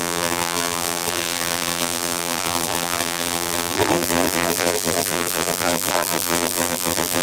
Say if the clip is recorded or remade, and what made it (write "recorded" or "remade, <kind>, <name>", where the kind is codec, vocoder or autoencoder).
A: remade, vocoder, BigVGAN v2